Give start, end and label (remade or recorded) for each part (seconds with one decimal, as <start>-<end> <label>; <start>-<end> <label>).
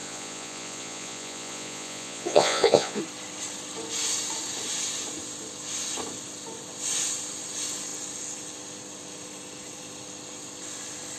0.0-3.0 remade; 3.0-11.2 recorded